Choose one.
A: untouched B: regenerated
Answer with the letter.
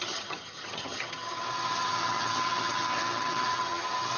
B